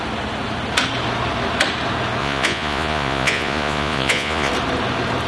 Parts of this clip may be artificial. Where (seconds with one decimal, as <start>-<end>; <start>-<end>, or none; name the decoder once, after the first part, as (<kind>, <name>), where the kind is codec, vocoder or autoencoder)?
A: 2.2-4.5 (vocoder, Vocos)